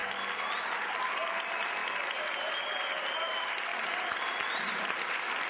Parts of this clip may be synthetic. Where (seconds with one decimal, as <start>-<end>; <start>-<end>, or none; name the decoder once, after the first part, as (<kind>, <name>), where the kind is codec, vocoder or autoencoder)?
1.8-2.5 (vocoder, BigVGAN v2); 3.7-4.6